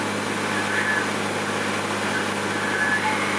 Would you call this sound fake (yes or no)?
no